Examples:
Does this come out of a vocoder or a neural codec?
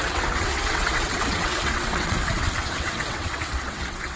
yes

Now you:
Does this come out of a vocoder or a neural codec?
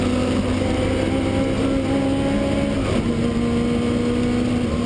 no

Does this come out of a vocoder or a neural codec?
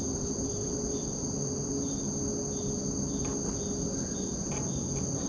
no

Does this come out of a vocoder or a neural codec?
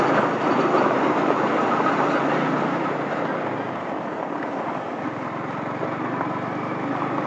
no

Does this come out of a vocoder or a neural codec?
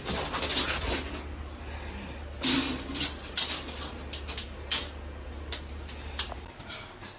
no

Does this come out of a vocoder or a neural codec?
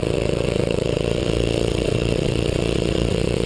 yes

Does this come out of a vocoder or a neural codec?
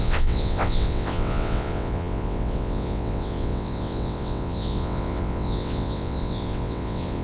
yes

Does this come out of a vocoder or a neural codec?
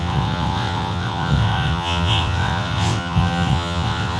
yes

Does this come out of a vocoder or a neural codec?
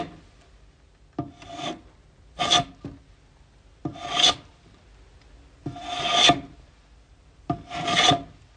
no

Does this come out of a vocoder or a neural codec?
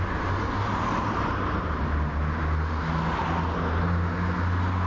no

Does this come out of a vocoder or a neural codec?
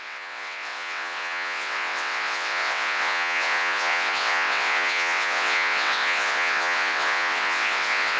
yes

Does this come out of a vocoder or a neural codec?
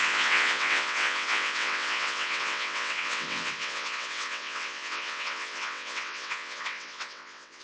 yes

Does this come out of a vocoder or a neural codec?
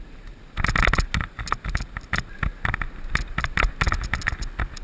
no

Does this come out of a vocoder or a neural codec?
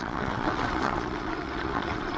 yes